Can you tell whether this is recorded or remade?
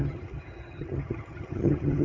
remade